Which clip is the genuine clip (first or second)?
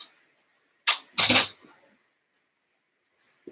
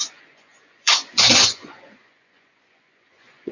first